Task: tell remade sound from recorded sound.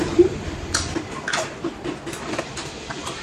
remade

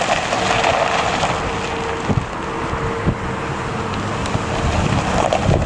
recorded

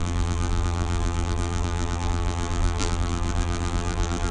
remade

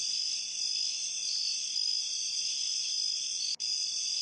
recorded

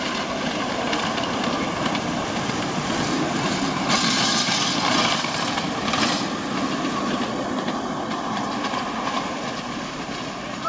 remade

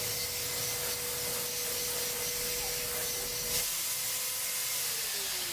recorded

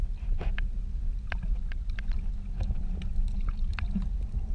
recorded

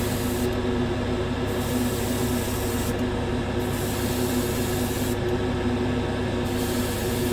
recorded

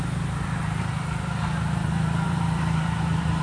remade